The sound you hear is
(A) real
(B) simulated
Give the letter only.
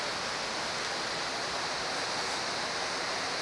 A